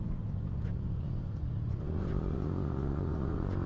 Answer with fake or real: fake